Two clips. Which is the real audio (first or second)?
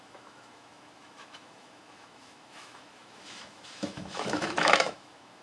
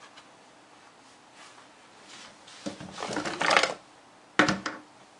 second